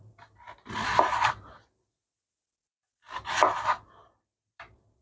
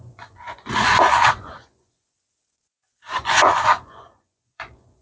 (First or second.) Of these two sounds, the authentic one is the first